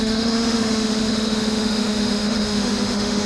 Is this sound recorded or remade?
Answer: remade